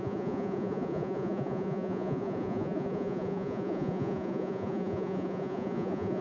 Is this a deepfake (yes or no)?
yes